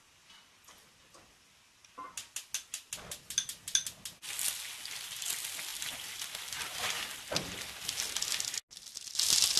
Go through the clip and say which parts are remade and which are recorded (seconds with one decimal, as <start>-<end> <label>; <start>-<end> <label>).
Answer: 0.0-9.6 recorded